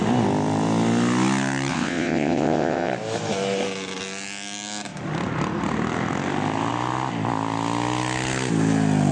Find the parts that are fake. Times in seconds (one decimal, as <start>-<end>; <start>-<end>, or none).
1.7-2.9